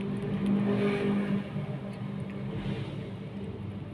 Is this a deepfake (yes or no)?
no